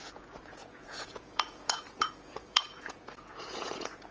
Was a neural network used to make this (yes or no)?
yes